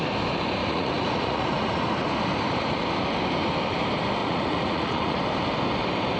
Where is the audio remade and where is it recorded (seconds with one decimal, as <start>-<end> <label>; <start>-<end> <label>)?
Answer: 0.0-0.6 recorded; 0.6-1.9 remade; 1.9-4.2 recorded; 4.2-5.2 remade; 5.2-6.2 recorded